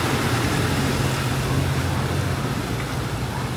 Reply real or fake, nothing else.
real